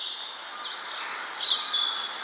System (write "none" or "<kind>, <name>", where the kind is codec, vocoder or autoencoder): none